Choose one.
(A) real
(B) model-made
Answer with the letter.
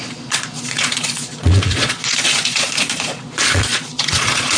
B